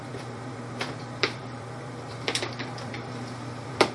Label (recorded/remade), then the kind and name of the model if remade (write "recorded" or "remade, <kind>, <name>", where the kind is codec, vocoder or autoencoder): remade, vocoder, BigVGAN v2